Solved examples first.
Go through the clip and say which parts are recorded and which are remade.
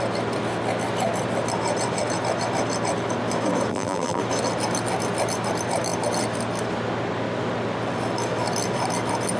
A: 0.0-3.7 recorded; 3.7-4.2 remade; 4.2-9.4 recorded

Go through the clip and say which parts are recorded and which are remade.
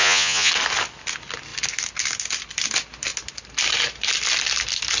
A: 0.0-0.5 remade; 0.5-5.0 recorded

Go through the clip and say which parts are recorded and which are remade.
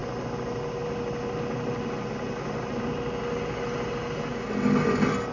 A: 0.0-5.3 recorded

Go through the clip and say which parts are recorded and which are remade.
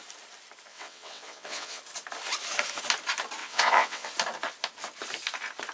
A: 0.0-0.7 recorded; 0.7-1.8 remade; 1.8-3.4 recorded; 3.4-4.1 remade; 4.1-5.7 recorded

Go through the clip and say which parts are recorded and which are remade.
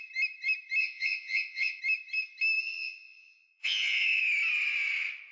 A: 0.0-0.8 recorded; 0.8-1.8 remade; 1.8-2.6 recorded; 2.6-4.2 remade; 4.2-5.3 recorded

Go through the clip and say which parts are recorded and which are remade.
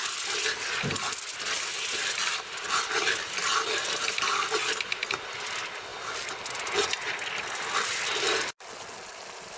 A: 0.0-2.2 recorded; 2.2-2.8 remade; 2.8-9.6 recorded